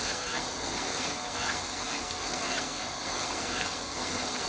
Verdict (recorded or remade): remade